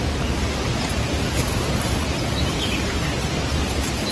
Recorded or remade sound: recorded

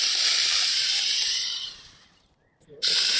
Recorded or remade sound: remade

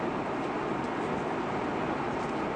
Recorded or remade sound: recorded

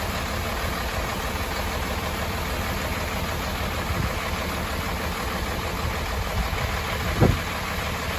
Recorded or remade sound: recorded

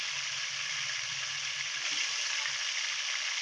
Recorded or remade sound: recorded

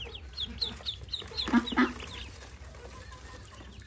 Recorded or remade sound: recorded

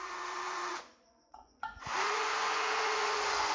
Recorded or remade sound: remade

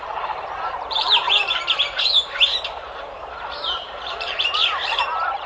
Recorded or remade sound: remade